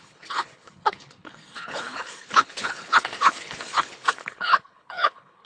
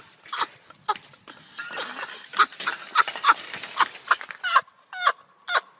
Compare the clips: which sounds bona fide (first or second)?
second